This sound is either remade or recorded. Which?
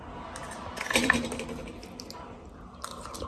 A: recorded